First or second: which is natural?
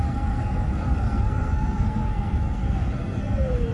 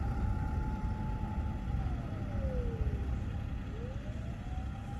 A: second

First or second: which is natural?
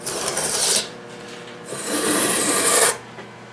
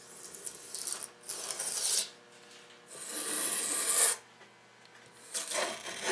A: second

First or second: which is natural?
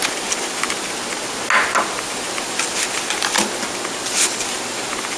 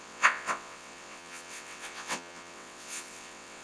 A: first